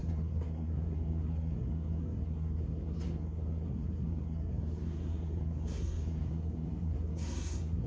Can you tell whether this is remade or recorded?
remade